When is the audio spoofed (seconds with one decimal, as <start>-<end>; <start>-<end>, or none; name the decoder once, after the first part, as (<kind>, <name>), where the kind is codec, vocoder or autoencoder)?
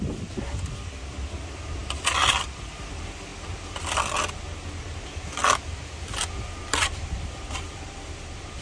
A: 6.6-8.6 (vocoder, BigVGAN v2)